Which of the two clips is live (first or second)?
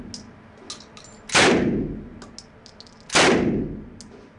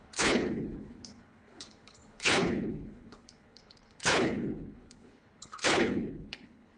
first